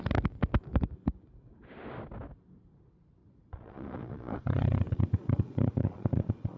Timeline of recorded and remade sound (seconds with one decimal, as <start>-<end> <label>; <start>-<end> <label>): 0.0-3.2 recorded; 3.2-6.6 remade

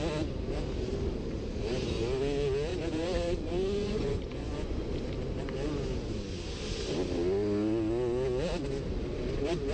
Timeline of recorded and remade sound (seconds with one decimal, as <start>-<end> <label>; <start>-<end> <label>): 0.0-2.7 recorded; 2.7-4.9 remade; 4.9-9.7 recorded

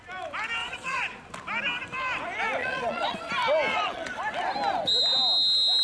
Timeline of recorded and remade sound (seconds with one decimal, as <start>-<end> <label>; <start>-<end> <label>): 0.0-0.6 recorded; 0.6-1.2 remade; 1.2-2.6 recorded; 2.6-3.3 remade; 3.3-3.7 recorded; 3.7-4.2 remade; 4.2-5.8 recorded

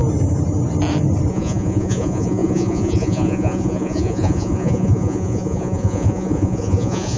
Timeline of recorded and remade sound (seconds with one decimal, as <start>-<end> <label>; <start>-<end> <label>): 0.0-1.3 recorded; 1.3-7.2 remade

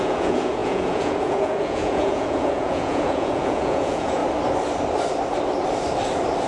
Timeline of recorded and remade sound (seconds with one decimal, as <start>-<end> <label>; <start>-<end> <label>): 0.0-4.2 remade; 4.2-6.5 recorded

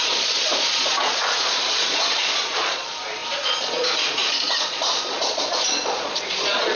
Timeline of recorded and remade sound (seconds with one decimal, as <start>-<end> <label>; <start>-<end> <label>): 0.0-6.7 remade

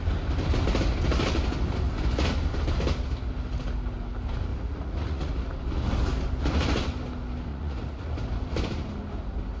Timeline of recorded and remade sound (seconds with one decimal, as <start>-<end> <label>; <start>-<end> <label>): 0.0-4.5 recorded; 4.5-5.3 remade; 5.3-7.5 recorded; 7.5-8.1 remade; 8.1-9.6 recorded

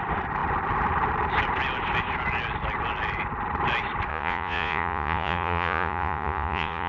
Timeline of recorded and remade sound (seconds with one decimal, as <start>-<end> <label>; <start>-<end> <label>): 0.0-4.1 recorded; 4.1-6.9 remade